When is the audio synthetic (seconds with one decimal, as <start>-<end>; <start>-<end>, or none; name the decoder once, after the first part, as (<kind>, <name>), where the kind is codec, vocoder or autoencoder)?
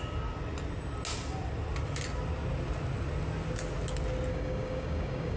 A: 4.3-5.4 (codec, DAC)